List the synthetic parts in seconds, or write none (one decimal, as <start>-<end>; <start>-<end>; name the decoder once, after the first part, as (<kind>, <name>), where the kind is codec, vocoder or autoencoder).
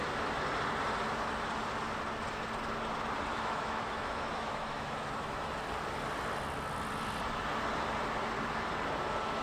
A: 3.3-5.5 (autoencoder, DAC-VAE)